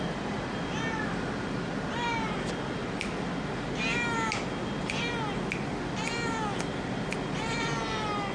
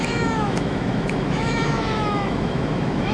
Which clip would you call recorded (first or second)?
first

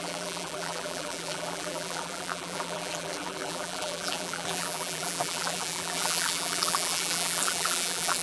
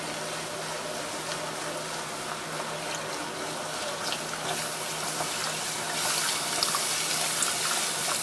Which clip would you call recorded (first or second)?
second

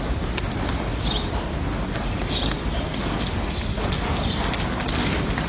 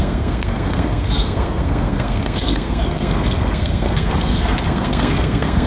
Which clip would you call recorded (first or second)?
first